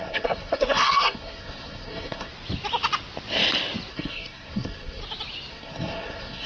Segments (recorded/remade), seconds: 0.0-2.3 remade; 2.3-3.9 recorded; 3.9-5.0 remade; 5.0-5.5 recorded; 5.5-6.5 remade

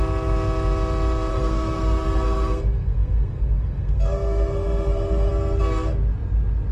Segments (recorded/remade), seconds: 0.0-1.3 recorded; 1.3-5.3 remade; 5.3-6.7 recorded

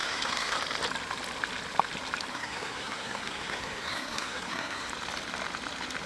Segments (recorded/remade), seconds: 0.0-0.6 remade; 0.6-2.3 recorded; 2.3-4.9 remade; 4.9-6.1 recorded

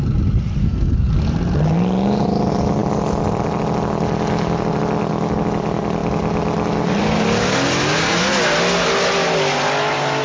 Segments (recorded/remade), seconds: 0.0-0.6 recorded; 0.6-1.1 remade; 1.1-10.2 recorded

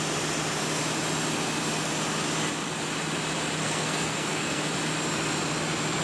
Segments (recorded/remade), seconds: 0.0-3.6 recorded; 3.6-4.6 remade; 4.6-6.0 recorded

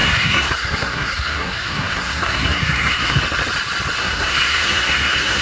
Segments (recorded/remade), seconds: 0.0-3.2 remade; 3.2-4.0 recorded; 4.0-5.4 remade

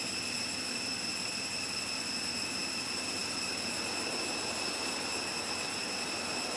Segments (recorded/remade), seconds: 0.0-6.6 recorded